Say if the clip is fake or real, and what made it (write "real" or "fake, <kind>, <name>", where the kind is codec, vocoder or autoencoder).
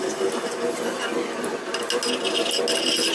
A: real